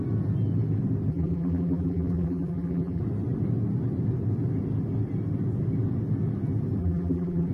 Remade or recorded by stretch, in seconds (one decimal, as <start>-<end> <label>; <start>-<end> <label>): 0.0-1.1 recorded; 1.1-3.0 remade; 3.0-6.8 recorded; 6.8-7.5 remade